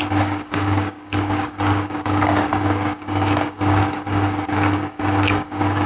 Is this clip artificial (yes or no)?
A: yes